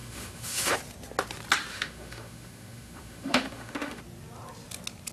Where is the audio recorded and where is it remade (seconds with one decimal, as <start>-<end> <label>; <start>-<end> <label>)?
0.0-0.7 remade; 0.7-1.7 recorded; 1.7-4.0 remade; 4.0-5.1 recorded

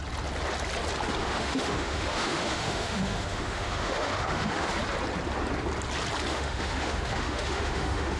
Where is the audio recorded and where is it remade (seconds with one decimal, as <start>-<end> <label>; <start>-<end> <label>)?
0.0-1.2 recorded; 1.2-4.7 remade; 4.7-6.3 recorded; 6.3-8.2 remade